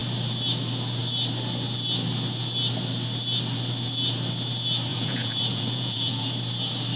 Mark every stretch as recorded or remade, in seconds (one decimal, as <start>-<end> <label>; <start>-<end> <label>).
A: 0.0-4.9 recorded; 4.9-6.3 remade; 6.3-7.0 recorded